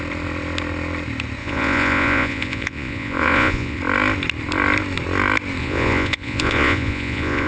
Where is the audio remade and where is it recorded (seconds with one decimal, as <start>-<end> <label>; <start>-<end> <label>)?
0.0-1.4 recorded; 1.4-3.8 remade; 3.8-5.6 recorded; 5.6-7.5 remade